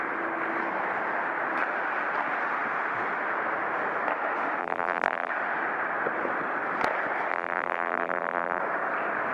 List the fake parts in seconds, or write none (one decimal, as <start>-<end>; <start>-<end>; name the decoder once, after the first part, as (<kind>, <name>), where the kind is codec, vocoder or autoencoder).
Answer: 4.6-5.3 (vocoder, BigVGAN v2); 7.3-8.6